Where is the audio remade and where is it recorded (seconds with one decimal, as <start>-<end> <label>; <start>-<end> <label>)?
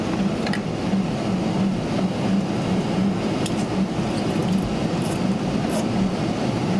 0.0-6.8 recorded